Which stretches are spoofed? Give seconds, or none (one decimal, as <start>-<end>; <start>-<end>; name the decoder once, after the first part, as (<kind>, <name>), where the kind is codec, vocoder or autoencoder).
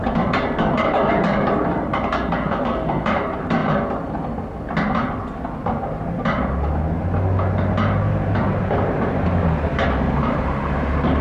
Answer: 0.9-3.6 (vocoder, BigVGAN v2); 8.1-11.2